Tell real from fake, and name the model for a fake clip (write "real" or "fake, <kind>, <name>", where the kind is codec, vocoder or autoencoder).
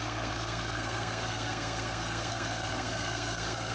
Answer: fake, codec, SNAC